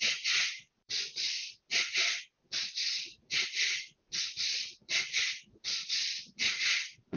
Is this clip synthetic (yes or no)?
yes